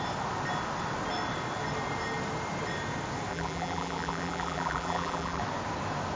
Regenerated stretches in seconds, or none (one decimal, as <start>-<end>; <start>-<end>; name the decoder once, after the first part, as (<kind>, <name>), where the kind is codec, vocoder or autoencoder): 3.3-5.4 (vocoder, BigVGAN v2)